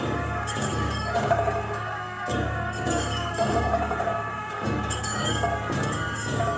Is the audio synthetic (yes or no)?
yes